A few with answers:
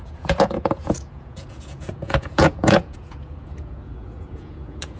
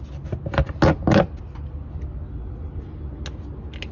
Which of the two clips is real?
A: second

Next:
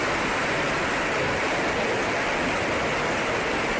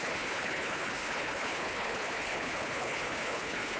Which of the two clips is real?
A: first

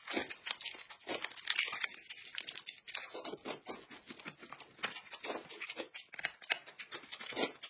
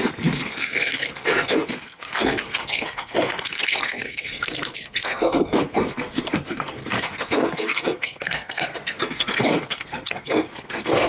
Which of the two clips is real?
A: first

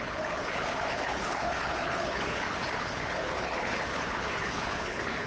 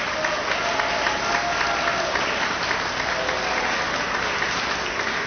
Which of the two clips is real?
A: second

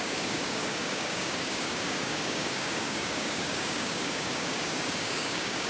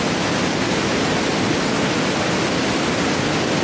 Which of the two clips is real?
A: second